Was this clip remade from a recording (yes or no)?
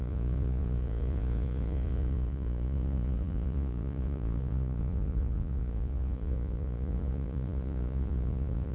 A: yes